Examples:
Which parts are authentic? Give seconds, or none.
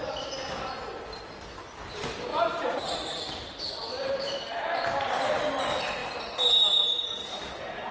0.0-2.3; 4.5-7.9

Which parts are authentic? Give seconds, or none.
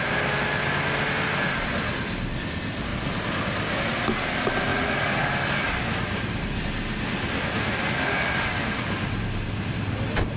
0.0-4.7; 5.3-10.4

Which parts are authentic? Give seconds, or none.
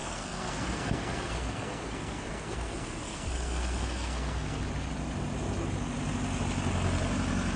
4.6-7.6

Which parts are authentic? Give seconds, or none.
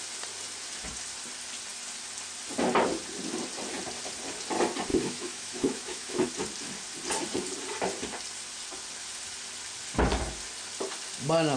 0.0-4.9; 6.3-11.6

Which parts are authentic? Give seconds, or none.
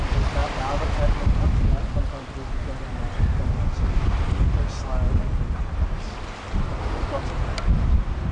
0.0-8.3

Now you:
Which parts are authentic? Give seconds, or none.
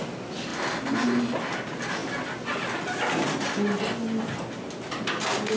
0.0-5.6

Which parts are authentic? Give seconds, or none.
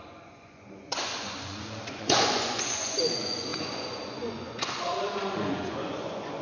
none